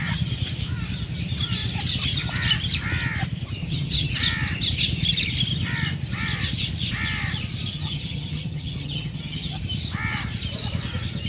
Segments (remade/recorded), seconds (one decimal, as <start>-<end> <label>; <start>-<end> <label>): 0.0-3.6 recorded; 3.6-4.1 remade; 4.1-7.7 recorded; 7.7-9.6 remade; 9.6-11.3 recorded